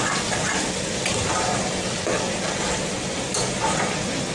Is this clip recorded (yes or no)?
yes